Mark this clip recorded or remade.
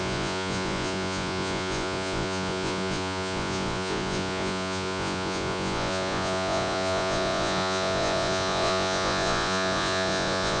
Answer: remade